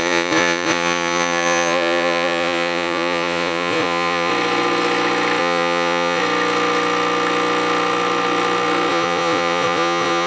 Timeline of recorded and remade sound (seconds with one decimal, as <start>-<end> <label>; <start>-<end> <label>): 0.0-4.3 remade; 4.3-5.4 recorded; 5.4-6.2 remade; 6.2-8.9 recorded; 8.9-10.3 remade